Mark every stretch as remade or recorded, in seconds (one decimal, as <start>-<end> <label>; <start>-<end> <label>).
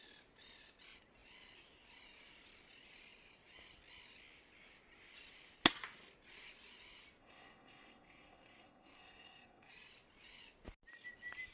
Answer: 0.0-7.2 recorded; 7.2-9.7 remade; 9.7-11.5 recorded